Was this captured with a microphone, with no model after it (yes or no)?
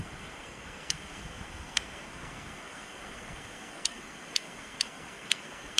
no